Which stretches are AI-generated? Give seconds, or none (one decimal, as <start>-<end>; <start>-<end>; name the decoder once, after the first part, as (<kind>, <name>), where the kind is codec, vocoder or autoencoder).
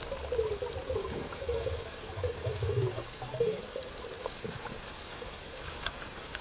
1.0-3.6 (codec, DAC); 4.2-6.4